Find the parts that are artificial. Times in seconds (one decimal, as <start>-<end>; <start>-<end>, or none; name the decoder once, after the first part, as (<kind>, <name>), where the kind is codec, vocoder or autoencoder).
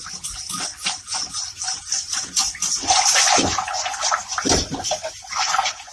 none